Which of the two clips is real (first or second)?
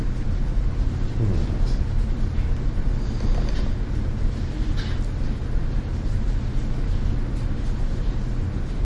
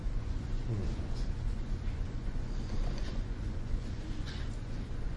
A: first